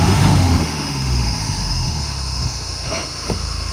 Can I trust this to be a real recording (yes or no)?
no